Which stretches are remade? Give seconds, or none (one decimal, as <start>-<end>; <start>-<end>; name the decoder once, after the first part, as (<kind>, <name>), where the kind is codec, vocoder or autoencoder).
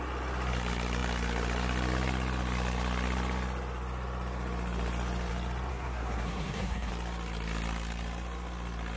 5.7-6.9 (codec, SNAC)